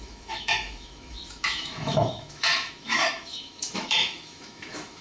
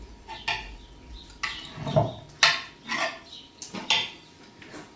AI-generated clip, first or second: first